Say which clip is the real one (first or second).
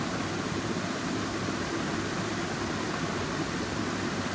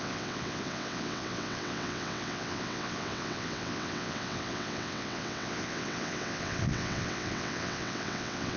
first